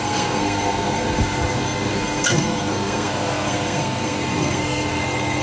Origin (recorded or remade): remade